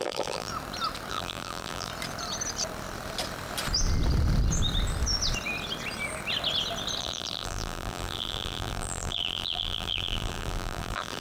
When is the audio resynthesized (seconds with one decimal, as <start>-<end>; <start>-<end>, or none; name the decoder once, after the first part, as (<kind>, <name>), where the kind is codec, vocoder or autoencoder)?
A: 0.0-0.5 (vocoder, BigVGAN v2); 1.1-1.9; 7.0-11.2